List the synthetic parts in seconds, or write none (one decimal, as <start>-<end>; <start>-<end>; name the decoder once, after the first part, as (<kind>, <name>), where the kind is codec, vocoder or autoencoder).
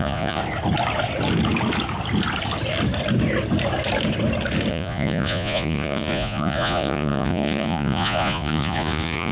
0.0-0.4 (vocoder, Vocos); 4.7-9.3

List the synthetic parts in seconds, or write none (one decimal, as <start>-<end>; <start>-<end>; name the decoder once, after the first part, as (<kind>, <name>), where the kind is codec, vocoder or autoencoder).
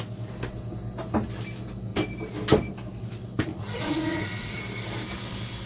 3.5-4.6 (vocoder, Vocos)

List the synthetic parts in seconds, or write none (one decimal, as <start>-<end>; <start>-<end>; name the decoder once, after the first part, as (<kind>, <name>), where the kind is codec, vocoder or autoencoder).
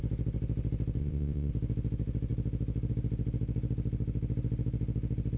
1.0-1.5 (vocoder, WaveNeXt)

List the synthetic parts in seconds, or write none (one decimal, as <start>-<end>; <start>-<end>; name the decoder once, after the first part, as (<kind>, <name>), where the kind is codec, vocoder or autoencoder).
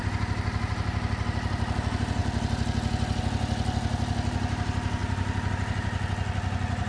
none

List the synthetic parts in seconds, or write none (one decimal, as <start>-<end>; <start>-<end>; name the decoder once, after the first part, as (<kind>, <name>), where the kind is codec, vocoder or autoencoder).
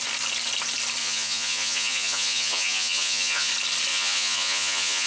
1.0-3.5 (vocoder, Vocos); 3.9-5.1